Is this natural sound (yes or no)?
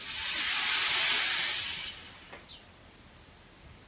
yes